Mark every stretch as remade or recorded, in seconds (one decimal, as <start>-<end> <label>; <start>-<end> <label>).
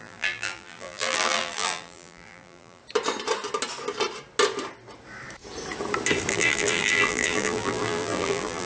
0.0-2.8 remade; 2.8-6.3 recorded; 6.3-8.7 remade